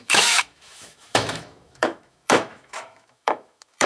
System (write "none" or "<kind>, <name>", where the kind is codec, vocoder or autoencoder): autoencoder, DAC-VAE